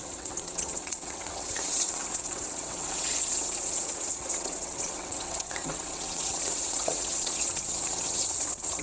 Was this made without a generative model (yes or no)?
no